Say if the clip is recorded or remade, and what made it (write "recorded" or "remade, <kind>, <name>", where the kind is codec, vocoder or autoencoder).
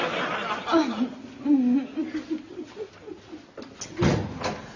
recorded